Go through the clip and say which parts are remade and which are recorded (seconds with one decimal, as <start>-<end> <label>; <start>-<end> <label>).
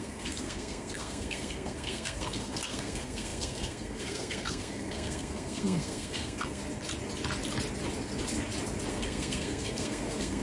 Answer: 0.0-6.6 remade; 6.6-8.9 recorded; 8.9-10.4 remade